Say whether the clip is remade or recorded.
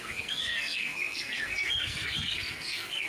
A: remade